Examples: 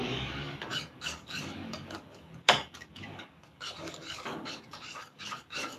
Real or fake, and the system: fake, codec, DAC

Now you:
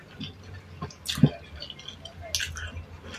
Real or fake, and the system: real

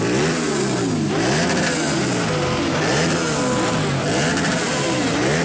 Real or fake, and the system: real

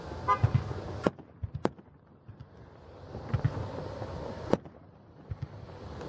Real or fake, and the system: real